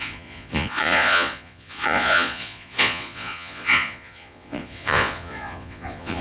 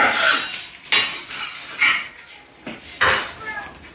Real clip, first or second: second